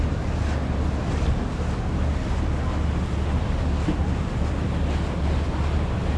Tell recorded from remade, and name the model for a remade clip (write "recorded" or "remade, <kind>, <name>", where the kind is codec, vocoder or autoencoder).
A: recorded